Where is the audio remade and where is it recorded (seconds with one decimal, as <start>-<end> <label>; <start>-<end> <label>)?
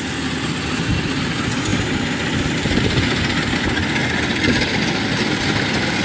0.0-6.0 recorded